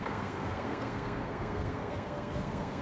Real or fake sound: fake